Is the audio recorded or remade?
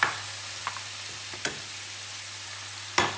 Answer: recorded